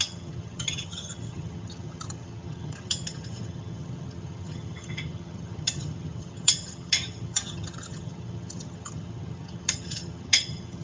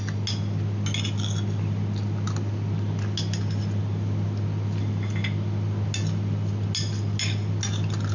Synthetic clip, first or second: first